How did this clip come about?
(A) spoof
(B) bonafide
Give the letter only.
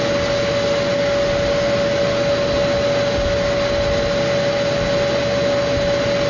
B